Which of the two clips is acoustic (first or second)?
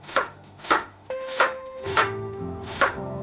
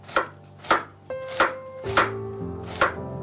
second